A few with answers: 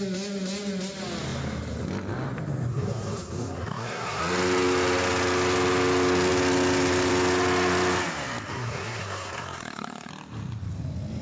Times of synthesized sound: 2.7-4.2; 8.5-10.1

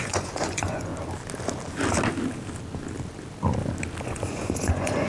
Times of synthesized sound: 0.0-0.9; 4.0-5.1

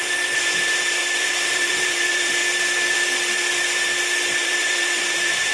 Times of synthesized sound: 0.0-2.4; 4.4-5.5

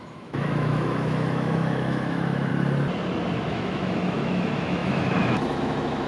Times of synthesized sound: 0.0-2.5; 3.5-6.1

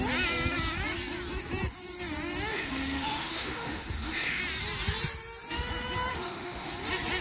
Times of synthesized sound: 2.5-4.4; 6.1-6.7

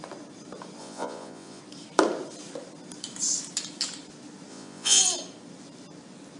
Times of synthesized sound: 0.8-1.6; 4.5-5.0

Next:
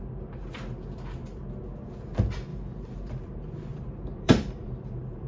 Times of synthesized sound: 2.5-3.2; 3.7-5.3